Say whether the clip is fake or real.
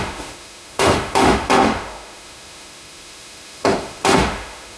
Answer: fake